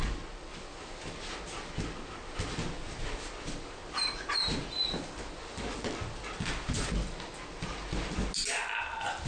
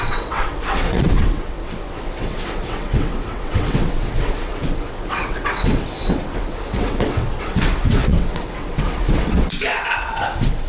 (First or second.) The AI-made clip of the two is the second